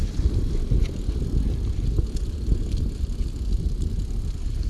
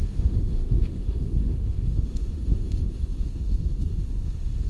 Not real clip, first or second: second